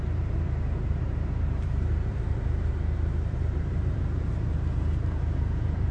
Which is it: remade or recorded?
remade